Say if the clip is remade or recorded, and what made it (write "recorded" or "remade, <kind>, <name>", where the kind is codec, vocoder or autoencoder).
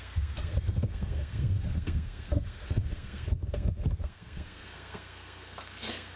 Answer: remade, codec, SNAC